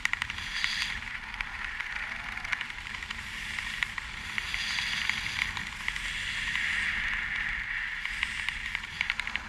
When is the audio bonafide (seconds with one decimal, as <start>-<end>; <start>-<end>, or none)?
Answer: 4.5-8.3